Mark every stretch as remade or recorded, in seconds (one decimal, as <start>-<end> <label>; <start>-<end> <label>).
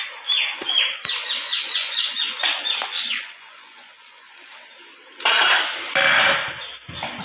0.0-1.4 recorded; 1.4-4.5 remade; 4.5-7.2 recorded